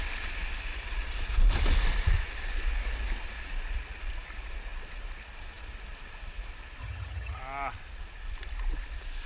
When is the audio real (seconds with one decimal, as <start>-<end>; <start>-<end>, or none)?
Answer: 0.0-6.8; 7.4-9.3